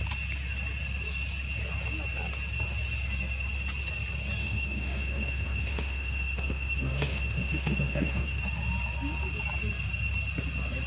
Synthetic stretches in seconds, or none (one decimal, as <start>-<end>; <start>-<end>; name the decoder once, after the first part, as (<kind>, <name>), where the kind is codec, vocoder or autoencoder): 4.4-8.4 (autoencoder, DAC-VAE)